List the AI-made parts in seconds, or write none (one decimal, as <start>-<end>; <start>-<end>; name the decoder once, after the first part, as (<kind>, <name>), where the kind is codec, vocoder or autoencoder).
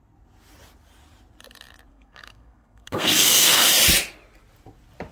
1.9-3.7 (codec, SNAC)